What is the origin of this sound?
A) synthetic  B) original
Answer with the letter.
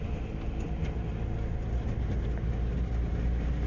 B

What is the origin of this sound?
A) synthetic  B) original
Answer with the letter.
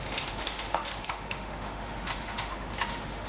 A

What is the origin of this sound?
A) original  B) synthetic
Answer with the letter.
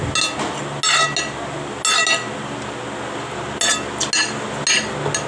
A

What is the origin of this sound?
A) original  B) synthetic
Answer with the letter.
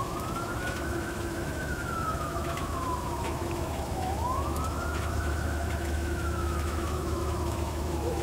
B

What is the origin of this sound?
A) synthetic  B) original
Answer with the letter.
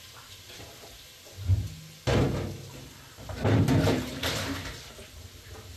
B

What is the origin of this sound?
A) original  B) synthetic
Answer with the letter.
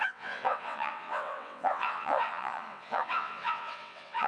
B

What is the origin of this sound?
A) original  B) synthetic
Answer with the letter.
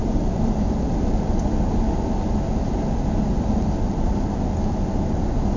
A